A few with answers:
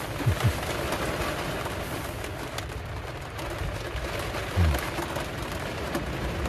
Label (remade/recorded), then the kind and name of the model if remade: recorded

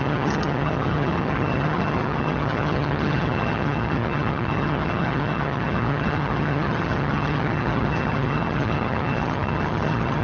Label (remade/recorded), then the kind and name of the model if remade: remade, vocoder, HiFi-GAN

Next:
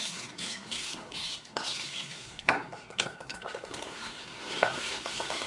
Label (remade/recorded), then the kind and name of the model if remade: remade, codec, SNAC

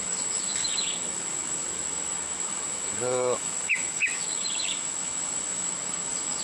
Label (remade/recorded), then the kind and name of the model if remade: remade, autoencoder, DAC-VAE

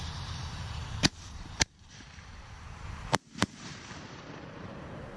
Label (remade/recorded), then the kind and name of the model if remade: remade, vocoder, BigVGAN v2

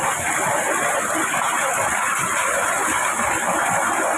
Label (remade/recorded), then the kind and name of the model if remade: recorded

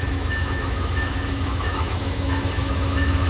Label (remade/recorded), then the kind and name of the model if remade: remade, autoencoder, DAC-VAE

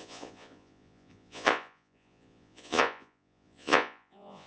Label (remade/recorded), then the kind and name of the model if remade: remade, vocoder, Vocos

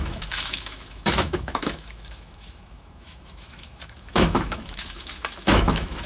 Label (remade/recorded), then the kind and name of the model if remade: remade, autoencoder, DAC-VAE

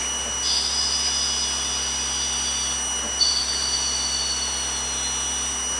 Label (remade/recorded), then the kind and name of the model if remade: recorded